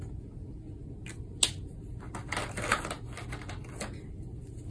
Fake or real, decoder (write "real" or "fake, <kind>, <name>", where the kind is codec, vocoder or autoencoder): real